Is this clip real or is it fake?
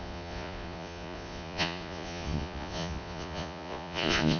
fake